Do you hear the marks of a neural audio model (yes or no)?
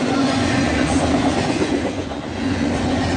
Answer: yes